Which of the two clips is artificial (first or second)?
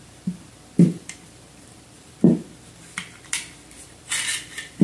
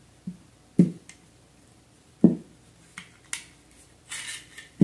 first